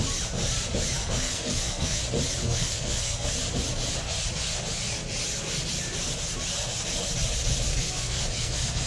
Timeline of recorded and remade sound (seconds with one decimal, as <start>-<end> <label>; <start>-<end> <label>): 0.0-1.0 recorded; 1.0-2.0 remade; 2.0-2.4 recorded; 2.4-3.3 remade; 3.3-7.7 recorded; 7.7-8.9 remade

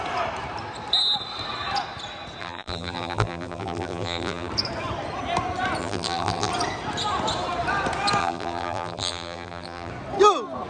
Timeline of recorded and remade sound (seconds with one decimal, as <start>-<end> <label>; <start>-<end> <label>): 0.0-2.4 recorded; 2.4-4.5 remade; 4.5-5.8 recorded; 5.8-6.5 remade; 6.5-8.2 recorded; 8.2-9.9 remade; 9.9-10.7 recorded

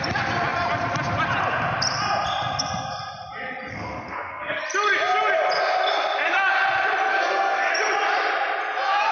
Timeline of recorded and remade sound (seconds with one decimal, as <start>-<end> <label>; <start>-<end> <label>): 0.0-3.7 recorded; 3.7-4.6 remade; 4.6-7.1 recorded; 7.1-7.7 remade; 7.7-9.1 recorded

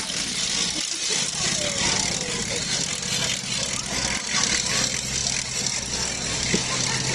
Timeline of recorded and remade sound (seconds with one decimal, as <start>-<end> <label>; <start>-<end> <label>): 0.0-7.1 recorded

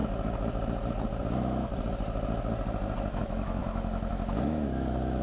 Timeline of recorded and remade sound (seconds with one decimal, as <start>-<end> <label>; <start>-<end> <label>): 0.0-1.2 recorded; 1.2-1.7 remade; 1.7-3.2 recorded; 3.2-5.2 remade

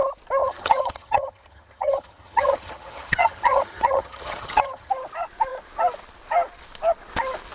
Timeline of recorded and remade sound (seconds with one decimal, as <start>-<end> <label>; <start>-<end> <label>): 0.0-0.4 recorded; 0.4-4.9 remade; 4.9-7.5 recorded

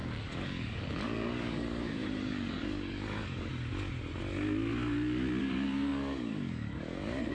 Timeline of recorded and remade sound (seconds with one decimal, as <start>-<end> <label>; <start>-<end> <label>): 0.0-3.5 remade; 3.5-5.4 recorded; 5.4-7.3 remade